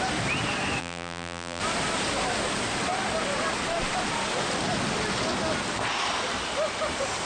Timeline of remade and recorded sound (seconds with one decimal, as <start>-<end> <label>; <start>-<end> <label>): 0.0-0.8 recorded; 0.8-1.6 remade; 1.6-7.3 recorded